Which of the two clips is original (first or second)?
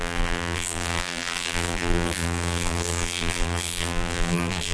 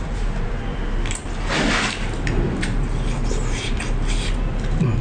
second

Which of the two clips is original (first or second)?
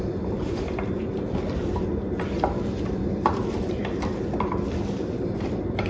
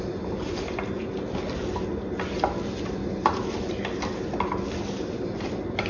second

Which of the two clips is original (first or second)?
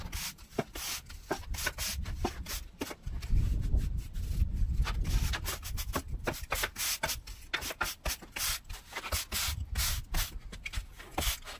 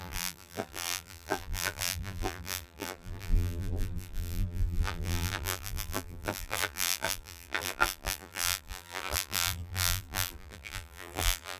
first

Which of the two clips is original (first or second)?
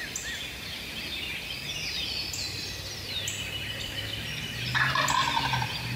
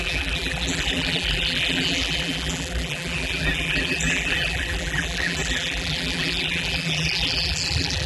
first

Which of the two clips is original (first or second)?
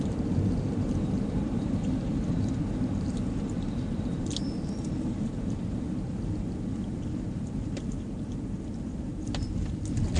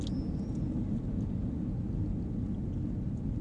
second